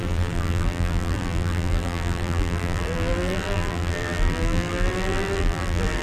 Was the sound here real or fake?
fake